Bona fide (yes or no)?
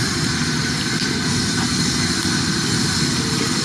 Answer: yes